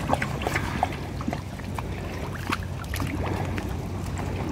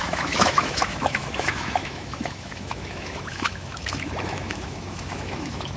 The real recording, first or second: first